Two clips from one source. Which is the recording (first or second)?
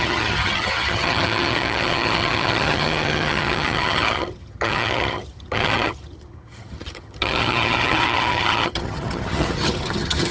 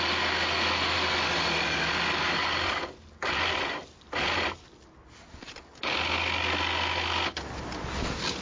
second